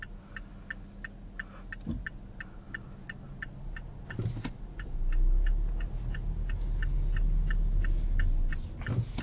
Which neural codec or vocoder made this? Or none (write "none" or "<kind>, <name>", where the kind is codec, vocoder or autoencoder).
none